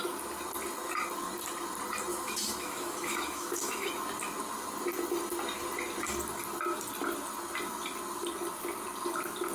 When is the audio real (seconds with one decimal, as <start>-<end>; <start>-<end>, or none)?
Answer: 0.0-2.1; 3.9-9.5